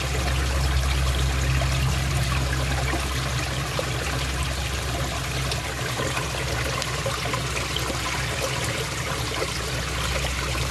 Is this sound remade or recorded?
recorded